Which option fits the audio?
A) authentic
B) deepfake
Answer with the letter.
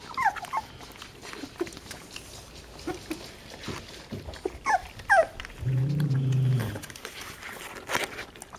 A